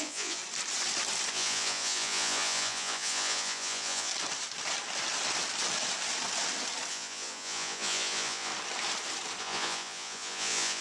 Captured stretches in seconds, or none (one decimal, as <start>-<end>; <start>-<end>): 0.4-1.3; 4.1-6.9; 8.5-9.4

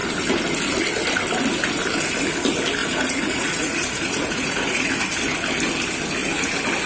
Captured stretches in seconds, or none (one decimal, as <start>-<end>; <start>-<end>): 0.0-2.8; 4.9-6.9

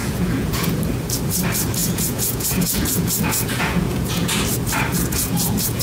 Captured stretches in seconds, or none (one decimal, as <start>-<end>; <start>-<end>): 0.8-1.8; 4.3-4.9